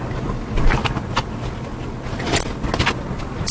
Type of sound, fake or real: real